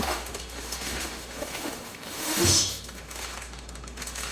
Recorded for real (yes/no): no